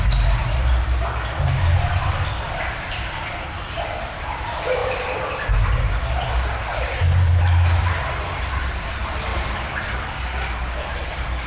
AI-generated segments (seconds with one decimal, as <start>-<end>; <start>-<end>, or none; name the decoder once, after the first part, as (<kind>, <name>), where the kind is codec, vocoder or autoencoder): none